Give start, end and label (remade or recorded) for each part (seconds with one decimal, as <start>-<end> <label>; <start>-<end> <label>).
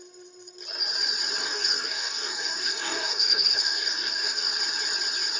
0.0-1.4 recorded; 1.4-4.5 remade; 4.5-5.4 recorded